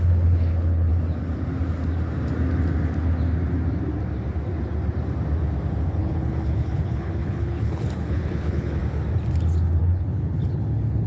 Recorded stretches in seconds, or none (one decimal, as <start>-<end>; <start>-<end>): 0.9-6.0; 8.8-9.8

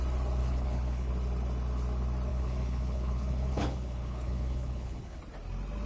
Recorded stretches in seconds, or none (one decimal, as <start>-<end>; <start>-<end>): 0.0-0.4; 1.1-2.3; 5.2-5.9

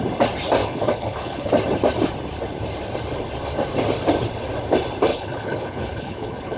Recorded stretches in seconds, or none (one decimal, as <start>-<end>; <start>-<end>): 0.0-0.6; 1.5-5.1

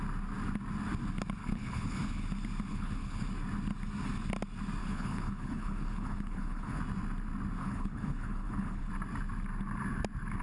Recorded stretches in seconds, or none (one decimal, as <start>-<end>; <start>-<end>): 0.0-1.4; 2.2-2.7; 3.3-4.8; 6.8-7.6; 8.9-10.4

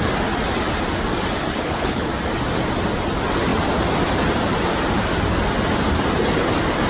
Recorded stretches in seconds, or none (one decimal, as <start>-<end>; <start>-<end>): 0.0-1.5; 2.1-6.9